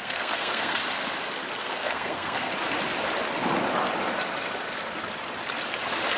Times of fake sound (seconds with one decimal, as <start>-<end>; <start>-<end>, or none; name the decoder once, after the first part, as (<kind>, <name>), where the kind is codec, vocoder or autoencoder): 0.0-0.8 (codec, SNAC); 1.6-2.5